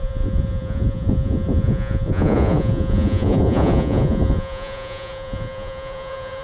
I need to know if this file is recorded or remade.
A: remade